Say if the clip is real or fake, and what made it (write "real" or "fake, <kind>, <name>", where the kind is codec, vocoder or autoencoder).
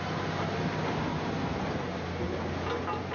real